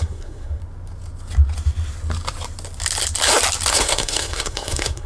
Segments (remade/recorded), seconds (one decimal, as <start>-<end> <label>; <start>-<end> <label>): 0.0-0.6 remade; 0.6-3.7 recorded; 3.7-5.1 remade